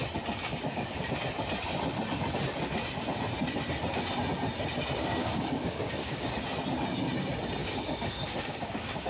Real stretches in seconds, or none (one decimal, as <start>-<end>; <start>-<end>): 0.0-0.5; 1.1-5.2; 6.3-7.6